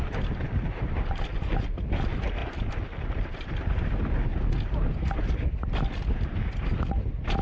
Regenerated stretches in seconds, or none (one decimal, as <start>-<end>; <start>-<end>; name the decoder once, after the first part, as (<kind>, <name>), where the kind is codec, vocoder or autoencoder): none

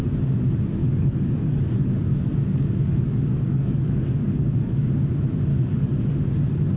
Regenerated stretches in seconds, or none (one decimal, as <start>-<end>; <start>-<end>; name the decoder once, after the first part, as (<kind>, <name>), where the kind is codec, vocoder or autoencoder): 0.8-4.9 (codec, DAC); 5.5-6.1

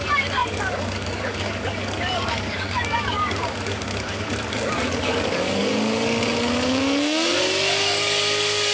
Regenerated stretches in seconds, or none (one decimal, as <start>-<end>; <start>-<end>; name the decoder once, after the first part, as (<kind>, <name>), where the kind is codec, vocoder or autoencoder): 0.0-8.7 (codec, DAC)

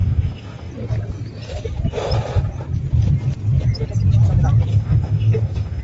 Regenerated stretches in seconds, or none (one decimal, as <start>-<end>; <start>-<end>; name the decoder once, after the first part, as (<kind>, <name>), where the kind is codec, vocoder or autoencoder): 0.0-0.7 (codec, DAC); 4.7-5.8